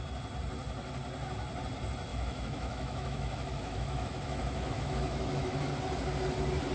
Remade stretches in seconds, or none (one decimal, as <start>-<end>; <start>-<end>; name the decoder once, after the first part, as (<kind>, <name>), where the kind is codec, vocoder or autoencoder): 2.1-5.7 (autoencoder, DAC-VAE)